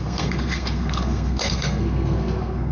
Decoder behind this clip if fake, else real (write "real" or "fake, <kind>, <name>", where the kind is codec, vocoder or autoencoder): fake, codec, SNAC